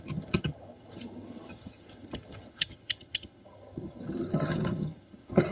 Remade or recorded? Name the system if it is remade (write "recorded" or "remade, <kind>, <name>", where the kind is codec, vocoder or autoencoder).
remade, vocoder, HiFi-GAN